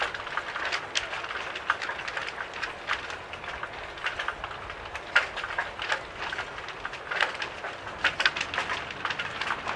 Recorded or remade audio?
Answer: recorded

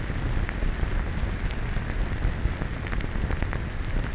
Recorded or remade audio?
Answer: recorded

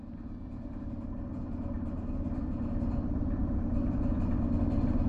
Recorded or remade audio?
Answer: recorded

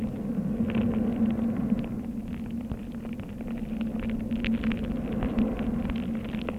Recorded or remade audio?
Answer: recorded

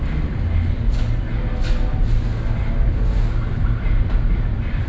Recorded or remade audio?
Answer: recorded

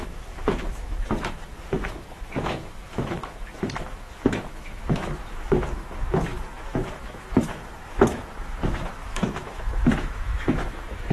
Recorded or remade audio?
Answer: remade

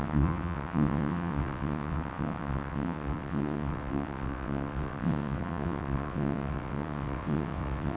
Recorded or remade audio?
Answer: remade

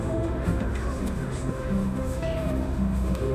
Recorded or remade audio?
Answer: remade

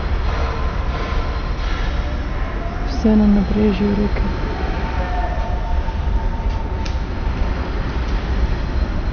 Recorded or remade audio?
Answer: recorded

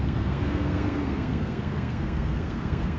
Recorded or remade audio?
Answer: remade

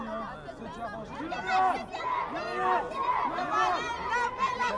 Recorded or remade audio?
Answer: recorded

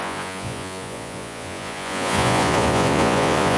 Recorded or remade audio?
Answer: remade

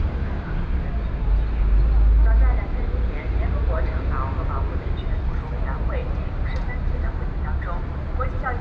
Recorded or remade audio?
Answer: recorded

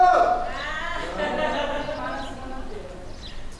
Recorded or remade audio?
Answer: recorded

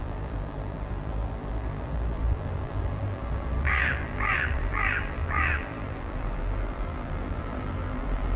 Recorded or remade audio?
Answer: remade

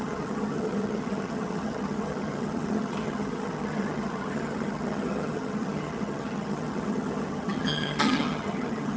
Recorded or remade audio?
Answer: remade